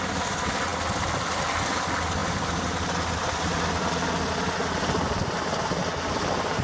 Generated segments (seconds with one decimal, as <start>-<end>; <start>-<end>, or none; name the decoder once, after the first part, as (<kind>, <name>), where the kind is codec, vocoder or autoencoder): none